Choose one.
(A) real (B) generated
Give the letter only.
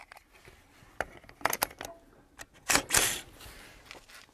A